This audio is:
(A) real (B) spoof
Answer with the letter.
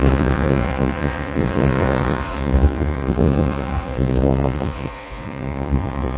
B